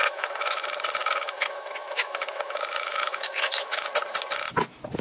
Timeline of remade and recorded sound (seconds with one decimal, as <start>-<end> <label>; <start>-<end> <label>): 0.0-0.6 remade; 0.6-1.0 recorded; 1.0-3.9 remade; 3.9-5.0 recorded

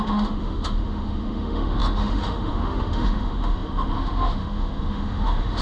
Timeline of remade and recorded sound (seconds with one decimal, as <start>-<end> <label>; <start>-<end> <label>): 0.0-5.6 remade

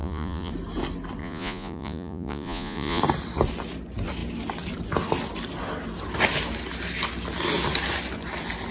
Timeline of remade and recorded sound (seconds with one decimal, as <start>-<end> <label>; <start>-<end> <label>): 0.0-0.5 remade; 0.5-1.2 recorded; 1.2-3.0 remade; 3.0-8.7 recorded

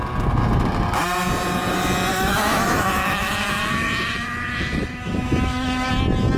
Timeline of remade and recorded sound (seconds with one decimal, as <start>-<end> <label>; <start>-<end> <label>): 0.0-2.1 recorded; 2.1-5.9 remade; 5.9-6.4 recorded